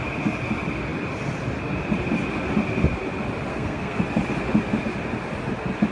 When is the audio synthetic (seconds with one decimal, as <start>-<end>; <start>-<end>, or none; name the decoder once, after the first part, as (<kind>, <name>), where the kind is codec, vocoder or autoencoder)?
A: 3.5-4.0 (codec, SNAC)